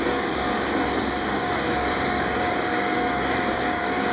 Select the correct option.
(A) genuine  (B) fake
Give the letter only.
B